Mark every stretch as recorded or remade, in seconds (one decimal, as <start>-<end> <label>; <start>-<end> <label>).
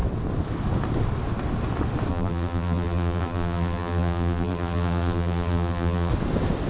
0.0-2.1 recorded; 2.1-6.1 remade; 6.1-6.7 recorded